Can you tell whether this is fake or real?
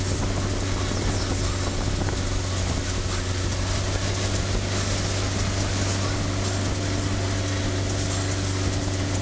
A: real